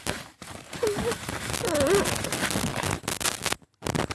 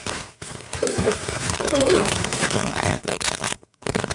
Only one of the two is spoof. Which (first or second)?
second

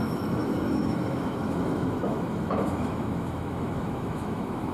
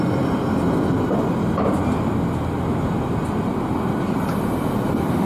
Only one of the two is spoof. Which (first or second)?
first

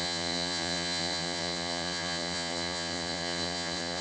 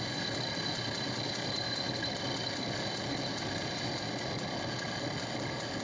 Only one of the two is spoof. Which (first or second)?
first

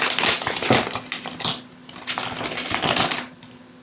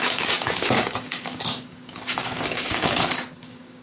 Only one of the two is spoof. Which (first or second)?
second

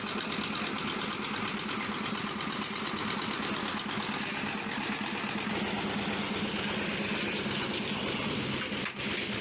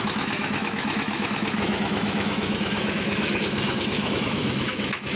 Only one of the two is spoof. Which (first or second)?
second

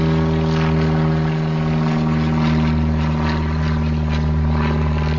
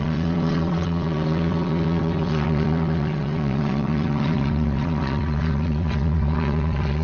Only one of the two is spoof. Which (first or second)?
second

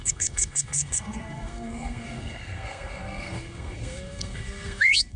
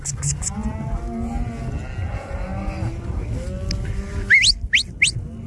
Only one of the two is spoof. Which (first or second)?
first